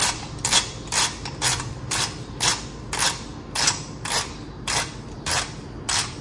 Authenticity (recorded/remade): recorded